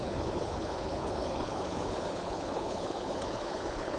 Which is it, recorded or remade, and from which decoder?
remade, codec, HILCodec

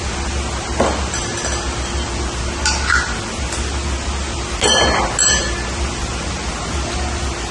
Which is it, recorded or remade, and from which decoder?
recorded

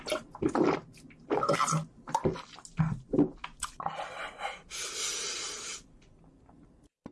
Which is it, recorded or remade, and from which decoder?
recorded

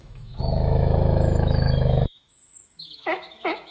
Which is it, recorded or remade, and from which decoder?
remade, autoencoder, DAC-VAE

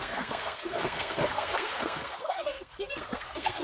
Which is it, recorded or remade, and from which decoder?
remade, codec, SNAC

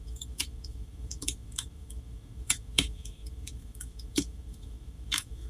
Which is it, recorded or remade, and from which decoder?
remade, autoencoder, DAC-VAE